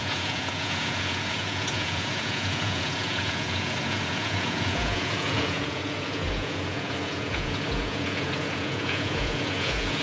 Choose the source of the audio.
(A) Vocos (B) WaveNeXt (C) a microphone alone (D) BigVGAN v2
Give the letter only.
A